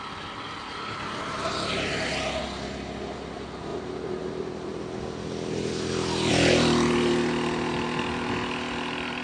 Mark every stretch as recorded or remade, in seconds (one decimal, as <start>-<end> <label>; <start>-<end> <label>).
0.0-9.2 recorded